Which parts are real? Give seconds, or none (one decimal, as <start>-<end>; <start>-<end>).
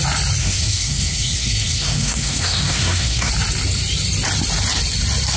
0.0-0.4; 3.3-5.4